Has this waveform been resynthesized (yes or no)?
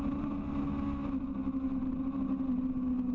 no